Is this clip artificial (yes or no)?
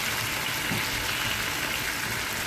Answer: no